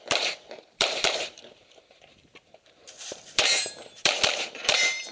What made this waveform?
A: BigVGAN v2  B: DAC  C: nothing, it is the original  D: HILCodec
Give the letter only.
A